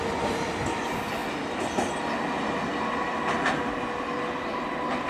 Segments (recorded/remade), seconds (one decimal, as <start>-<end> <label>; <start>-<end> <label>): 0.0-5.1 recorded